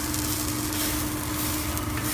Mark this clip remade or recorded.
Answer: recorded